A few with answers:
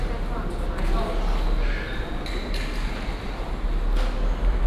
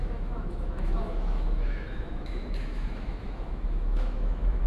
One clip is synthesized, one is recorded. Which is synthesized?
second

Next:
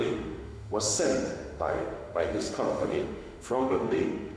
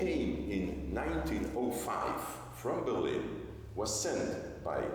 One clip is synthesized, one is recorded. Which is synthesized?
first